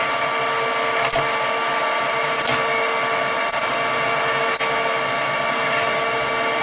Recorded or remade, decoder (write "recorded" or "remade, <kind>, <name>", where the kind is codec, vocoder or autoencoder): recorded